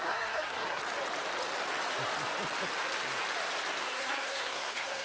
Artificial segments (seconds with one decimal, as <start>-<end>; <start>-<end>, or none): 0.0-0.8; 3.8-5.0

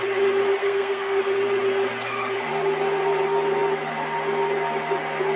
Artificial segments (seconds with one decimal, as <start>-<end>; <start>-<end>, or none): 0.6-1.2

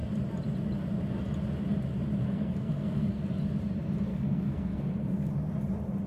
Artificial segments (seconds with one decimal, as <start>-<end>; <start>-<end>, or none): 2.2-3.2; 4.1-5.3

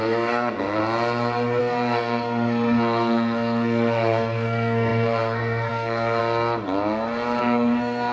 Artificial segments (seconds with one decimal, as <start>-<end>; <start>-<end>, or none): 0.0-0.8; 1.6-6.2; 7.4-8.1

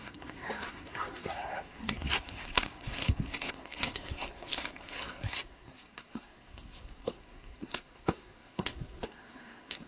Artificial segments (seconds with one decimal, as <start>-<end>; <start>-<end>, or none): 0.0-9.9